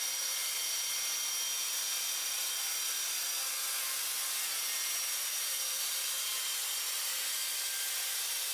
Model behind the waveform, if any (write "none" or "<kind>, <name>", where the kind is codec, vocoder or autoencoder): none